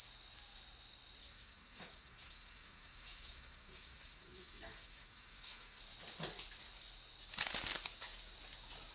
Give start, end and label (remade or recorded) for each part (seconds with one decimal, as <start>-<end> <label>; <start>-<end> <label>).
0.0-1.3 recorded; 1.3-5.8 remade; 5.8-8.9 recorded